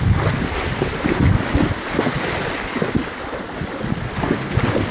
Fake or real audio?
real